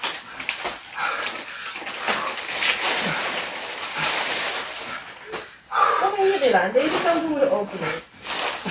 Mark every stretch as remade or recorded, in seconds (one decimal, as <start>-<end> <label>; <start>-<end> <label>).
0.0-8.7 recorded